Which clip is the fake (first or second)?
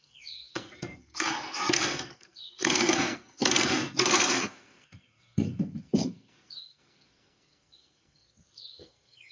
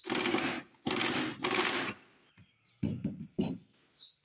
first